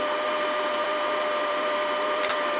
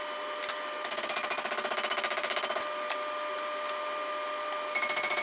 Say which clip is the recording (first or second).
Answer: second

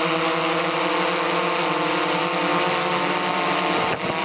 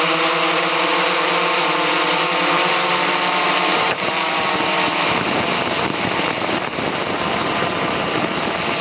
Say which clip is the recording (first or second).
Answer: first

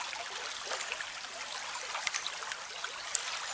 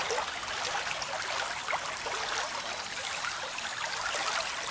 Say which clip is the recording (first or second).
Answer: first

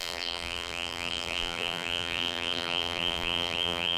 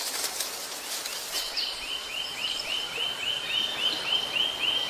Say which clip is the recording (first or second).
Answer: second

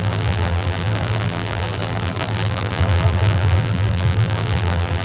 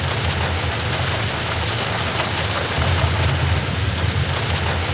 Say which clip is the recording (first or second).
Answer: second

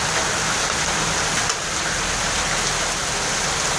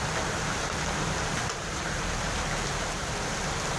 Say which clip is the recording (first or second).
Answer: first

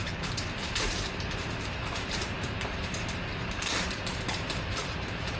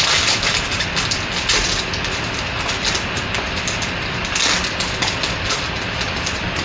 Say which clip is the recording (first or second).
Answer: second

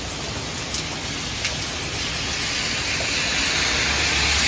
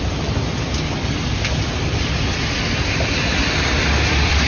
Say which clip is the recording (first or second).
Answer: first